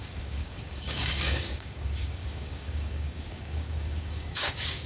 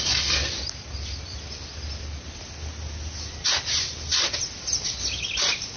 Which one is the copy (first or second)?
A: first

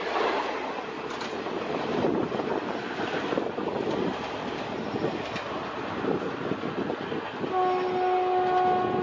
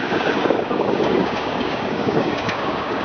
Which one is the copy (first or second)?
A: second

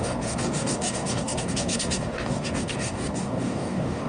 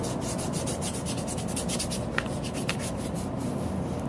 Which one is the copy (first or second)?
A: first